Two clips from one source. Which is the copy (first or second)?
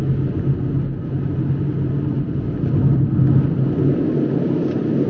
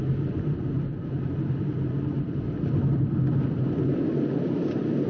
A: second